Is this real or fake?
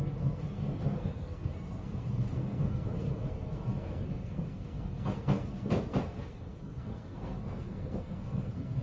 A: fake